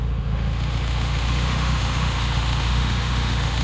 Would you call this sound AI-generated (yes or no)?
yes